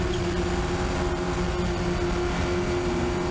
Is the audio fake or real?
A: real